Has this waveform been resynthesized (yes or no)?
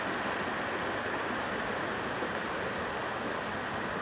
no